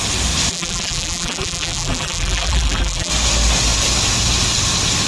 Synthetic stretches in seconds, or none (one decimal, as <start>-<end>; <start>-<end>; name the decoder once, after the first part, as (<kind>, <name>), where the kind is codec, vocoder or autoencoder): 0.5-3.1 (vocoder, BigVGAN v2)